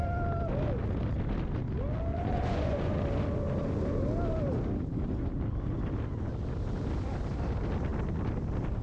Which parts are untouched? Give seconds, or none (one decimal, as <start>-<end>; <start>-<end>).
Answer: 0.0-2.1; 3.0-8.8